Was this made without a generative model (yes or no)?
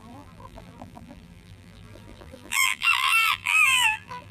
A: no